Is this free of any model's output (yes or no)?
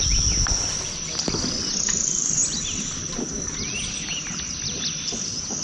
yes